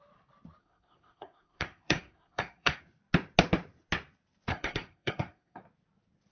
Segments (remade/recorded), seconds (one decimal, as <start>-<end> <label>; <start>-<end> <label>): 0.0-0.6 recorded; 0.6-2.8 remade; 2.8-4.5 recorded; 4.5-5.6 remade; 5.6-6.3 recorded